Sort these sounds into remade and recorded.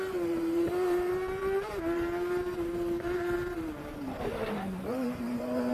remade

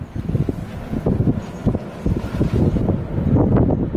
recorded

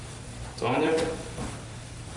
remade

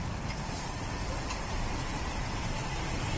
remade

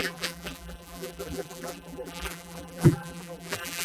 remade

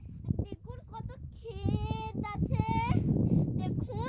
recorded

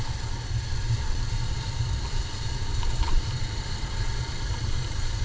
remade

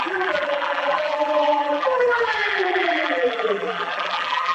remade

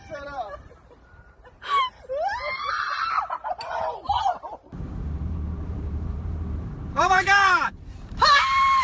remade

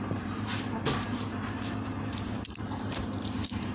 remade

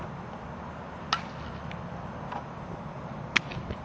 recorded